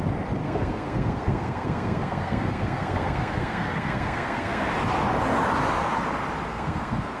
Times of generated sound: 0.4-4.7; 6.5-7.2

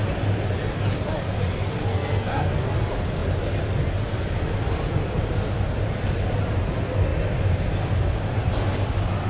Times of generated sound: 1.9-2.6

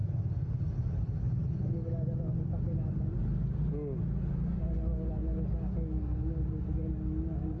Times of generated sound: none

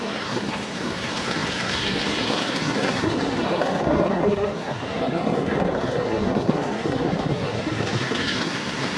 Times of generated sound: 0.0-9.0

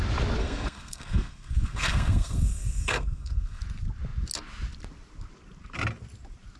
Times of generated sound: 0.4-3.6

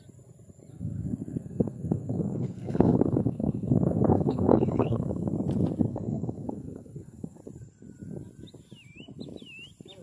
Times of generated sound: 0.7-5.3; 5.9-7.4